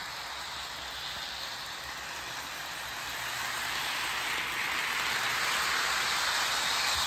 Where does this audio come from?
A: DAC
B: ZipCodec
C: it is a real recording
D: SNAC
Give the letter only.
C